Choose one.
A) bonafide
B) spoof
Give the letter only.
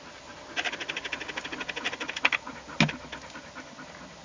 A